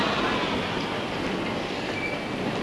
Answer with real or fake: real